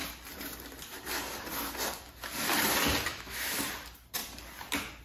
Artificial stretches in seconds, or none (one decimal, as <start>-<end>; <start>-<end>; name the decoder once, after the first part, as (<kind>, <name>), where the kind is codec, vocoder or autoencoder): 3.1-3.6 (autoencoder, DAC-VAE)